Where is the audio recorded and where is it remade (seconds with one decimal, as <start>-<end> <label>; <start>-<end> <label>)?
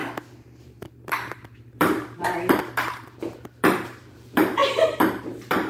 0.0-0.6 recorded; 0.6-5.7 remade